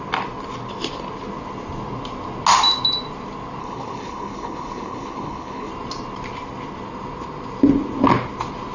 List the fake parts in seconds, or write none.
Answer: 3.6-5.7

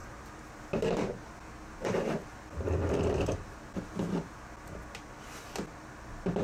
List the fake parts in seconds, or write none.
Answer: none

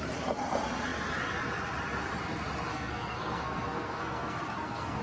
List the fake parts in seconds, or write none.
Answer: 2.7-5.0